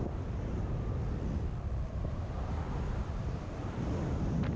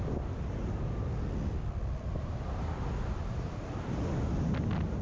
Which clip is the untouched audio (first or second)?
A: second